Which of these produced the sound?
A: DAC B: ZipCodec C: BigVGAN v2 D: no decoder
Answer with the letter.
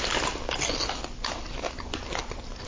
D